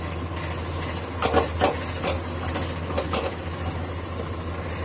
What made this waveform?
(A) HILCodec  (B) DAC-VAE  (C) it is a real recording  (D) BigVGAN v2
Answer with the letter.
C